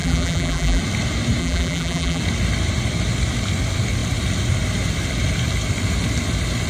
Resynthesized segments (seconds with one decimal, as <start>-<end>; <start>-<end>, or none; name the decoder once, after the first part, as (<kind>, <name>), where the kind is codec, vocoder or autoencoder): 0.0-0.8 (vocoder, BigVGAN v2); 1.4-2.2